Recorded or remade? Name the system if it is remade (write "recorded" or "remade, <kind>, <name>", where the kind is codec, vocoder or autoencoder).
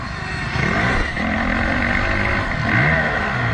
recorded